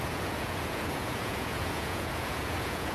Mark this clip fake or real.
fake